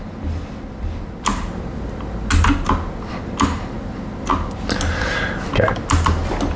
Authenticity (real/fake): real